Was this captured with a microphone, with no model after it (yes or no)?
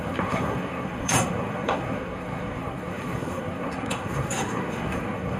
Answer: no